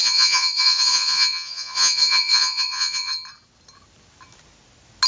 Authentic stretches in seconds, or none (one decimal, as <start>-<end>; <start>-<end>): 3.1-5.1